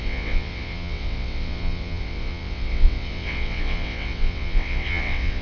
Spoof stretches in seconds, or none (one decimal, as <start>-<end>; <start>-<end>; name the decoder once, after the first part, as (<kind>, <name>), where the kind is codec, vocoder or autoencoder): 0.0-5.4 (vocoder, WaveNeXt)